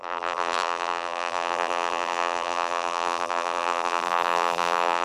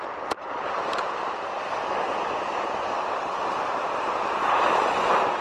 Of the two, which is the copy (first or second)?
first